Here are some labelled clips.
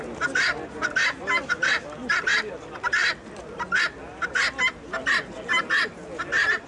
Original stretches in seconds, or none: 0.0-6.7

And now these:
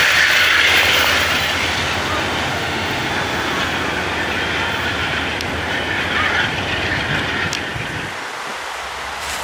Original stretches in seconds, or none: 0.0-2.5; 3.1-9.4

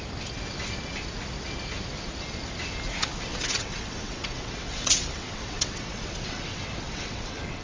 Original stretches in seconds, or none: 0.0-3.3